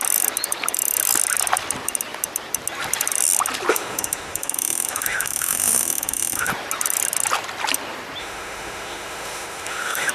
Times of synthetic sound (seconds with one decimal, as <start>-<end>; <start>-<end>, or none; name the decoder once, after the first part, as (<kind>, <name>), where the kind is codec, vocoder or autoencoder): 3.7-6.5 (autoencoder, DAC-VAE); 8.2-10.1